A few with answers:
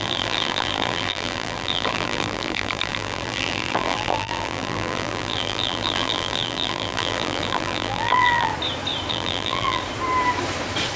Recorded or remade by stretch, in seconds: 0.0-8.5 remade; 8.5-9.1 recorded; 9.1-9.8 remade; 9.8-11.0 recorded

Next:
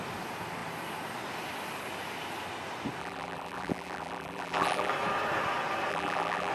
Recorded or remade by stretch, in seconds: 0.0-3.0 recorded; 3.0-4.9 remade; 4.9-5.9 recorded; 5.9-6.5 remade